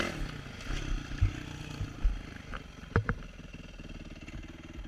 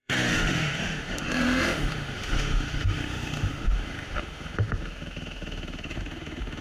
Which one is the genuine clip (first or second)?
first